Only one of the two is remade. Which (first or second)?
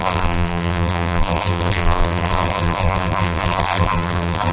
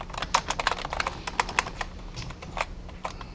first